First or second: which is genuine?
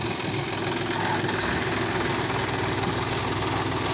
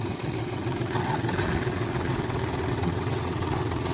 first